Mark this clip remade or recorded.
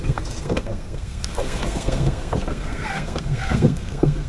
remade